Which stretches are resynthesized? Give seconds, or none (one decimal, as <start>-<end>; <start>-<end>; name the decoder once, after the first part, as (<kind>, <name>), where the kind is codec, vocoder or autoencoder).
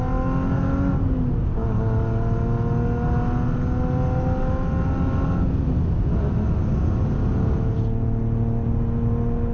none